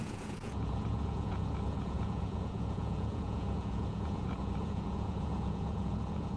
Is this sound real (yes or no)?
no